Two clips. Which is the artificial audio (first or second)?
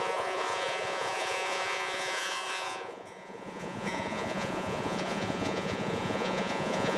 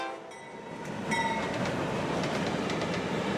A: first